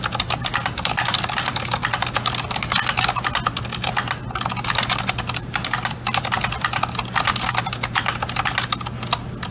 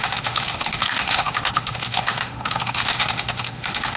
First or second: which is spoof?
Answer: second